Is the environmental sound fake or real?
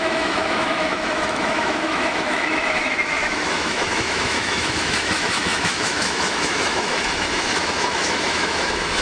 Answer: fake